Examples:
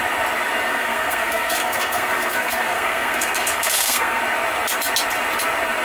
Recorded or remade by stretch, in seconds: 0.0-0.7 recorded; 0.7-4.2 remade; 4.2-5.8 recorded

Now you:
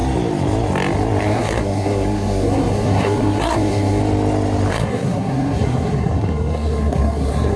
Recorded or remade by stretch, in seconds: 0.0-1.2 recorded; 1.2-4.0 remade; 4.0-4.7 recorded; 4.7-7.6 remade

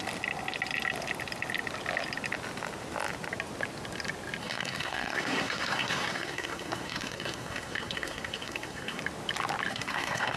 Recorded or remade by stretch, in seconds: 0.0-4.4 recorded; 4.4-9.0 remade; 9.0-9.7 recorded; 9.7-10.4 remade

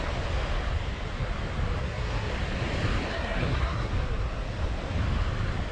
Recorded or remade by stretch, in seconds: 0.0-1.8 recorded; 1.8-2.3 remade; 2.3-3.1 recorded; 3.1-3.9 remade; 3.9-5.7 recorded

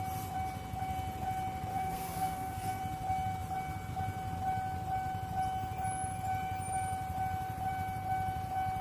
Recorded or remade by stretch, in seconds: 0.0-1.7 recorded; 1.7-2.8 remade; 2.8-8.8 recorded